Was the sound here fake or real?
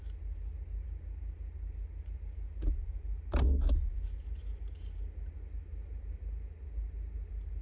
real